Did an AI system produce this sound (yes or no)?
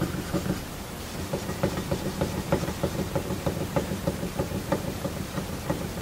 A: yes